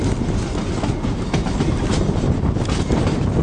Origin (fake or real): real